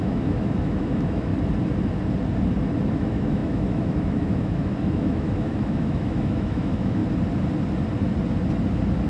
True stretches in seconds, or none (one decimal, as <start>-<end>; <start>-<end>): 1.3-2.9; 7.0-9.1